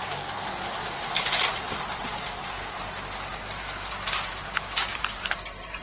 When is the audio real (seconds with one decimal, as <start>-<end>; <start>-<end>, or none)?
0.0-0.8; 2.0-3.3; 3.9-4.9